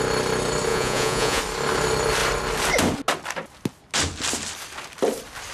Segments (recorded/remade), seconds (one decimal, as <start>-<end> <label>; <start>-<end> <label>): 0.0-0.7 recorded; 0.7-1.4 remade; 1.4-5.5 recorded